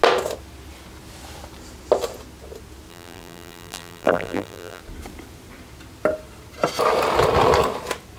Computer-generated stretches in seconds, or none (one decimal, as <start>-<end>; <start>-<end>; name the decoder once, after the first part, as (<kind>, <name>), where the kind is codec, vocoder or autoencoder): 2.9-4.8 (vocoder, BigVGAN v2)

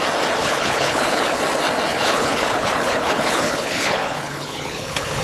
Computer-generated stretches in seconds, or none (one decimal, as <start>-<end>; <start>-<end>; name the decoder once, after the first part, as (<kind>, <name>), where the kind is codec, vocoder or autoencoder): 0.4-1.4 (codec, HILCodec); 1.9-5.2

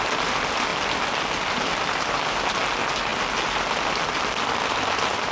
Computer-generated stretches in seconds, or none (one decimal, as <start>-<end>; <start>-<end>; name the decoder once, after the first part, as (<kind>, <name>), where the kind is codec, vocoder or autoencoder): none

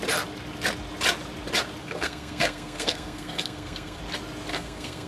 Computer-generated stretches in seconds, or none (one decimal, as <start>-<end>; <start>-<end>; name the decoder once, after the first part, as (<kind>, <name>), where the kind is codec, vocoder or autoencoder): 1.8-4.0 (codec, SNAC); 4.5-5.1

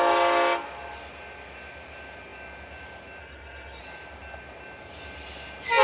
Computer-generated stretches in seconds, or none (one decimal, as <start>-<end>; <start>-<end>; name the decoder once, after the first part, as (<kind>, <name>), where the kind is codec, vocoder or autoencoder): 3.2-3.8 (codec, HILCodec)

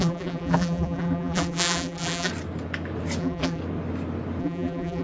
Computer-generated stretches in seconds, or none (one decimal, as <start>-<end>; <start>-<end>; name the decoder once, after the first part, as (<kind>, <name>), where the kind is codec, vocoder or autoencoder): 0.0-2.3 (vocoder, BigVGAN v2); 3.2-3.6; 4.4-5.0

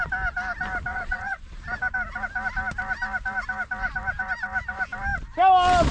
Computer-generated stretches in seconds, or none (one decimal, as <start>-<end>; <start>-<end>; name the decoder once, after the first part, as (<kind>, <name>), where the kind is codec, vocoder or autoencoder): 0.9-1.6 (vocoder, Vocos)

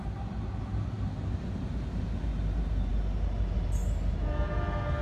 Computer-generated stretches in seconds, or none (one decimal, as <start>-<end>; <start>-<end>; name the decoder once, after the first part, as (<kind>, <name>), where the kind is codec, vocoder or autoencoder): none